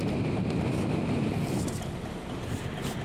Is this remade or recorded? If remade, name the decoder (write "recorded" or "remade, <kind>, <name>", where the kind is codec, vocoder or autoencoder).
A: recorded